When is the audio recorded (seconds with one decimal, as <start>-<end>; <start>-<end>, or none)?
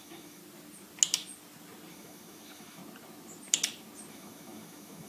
0.4-1.9; 2.8-4.1